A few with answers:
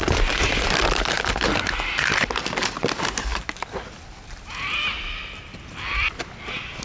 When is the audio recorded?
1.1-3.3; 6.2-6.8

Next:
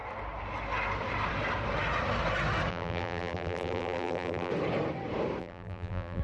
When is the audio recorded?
0.0-2.7; 4.5-5.4

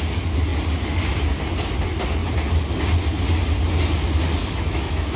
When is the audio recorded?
0.0-4.4

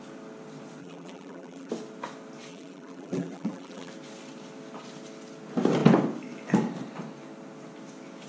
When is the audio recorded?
0.0-0.8; 1.7-2.5; 3.9-8.3

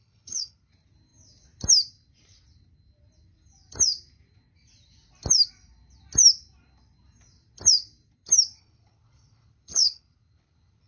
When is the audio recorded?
0.7-8.6